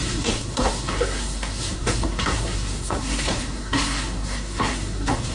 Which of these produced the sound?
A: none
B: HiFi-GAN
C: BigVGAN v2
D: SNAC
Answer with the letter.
D